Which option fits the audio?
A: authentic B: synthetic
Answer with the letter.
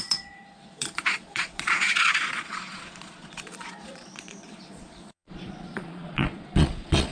B